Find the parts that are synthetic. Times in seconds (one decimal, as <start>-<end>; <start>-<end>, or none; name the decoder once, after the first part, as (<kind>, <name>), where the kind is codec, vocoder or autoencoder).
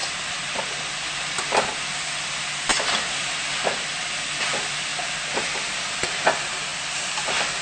none